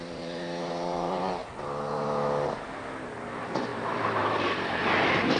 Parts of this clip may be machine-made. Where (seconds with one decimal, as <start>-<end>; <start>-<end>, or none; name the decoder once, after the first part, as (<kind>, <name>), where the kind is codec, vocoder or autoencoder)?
0.0-1.4 (vocoder, BigVGAN v2); 3.0-5.4